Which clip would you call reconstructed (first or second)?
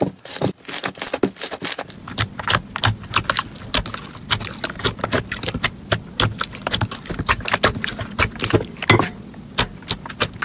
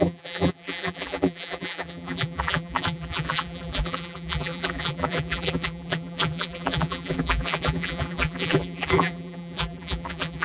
second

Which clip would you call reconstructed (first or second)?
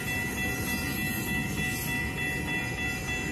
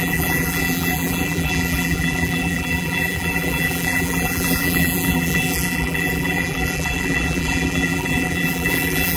second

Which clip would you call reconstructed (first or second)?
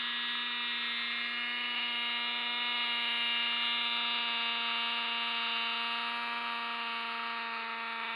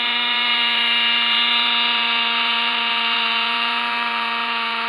second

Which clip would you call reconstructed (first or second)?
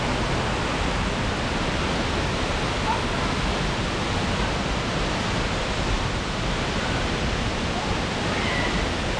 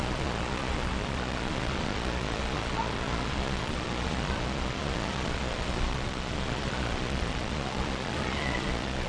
second